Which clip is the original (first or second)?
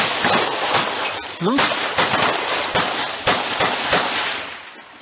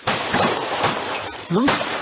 first